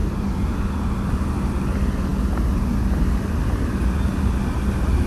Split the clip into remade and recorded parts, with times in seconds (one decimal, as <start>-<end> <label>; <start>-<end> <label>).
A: 0.0-5.1 recorded